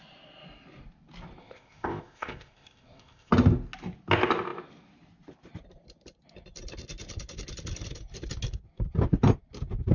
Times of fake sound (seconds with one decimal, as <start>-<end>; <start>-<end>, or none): 1.4-3.3

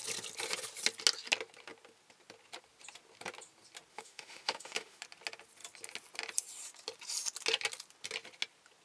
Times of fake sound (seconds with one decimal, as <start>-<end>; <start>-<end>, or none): 3.9-5.0

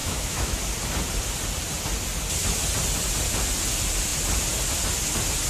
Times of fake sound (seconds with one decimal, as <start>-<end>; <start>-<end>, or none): 0.0-0.6